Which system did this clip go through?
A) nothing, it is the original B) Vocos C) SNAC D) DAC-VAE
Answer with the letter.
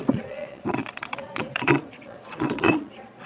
B